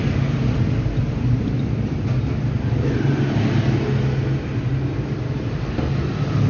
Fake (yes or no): no